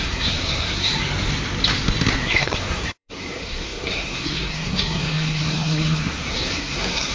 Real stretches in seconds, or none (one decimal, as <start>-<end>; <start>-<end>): 0.9-2.2